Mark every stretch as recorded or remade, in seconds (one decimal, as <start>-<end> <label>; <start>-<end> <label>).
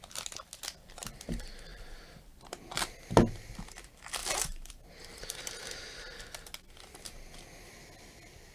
0.0-1.7 recorded; 1.7-2.9 remade; 2.9-4.2 recorded; 4.2-4.9 remade; 4.9-8.5 recorded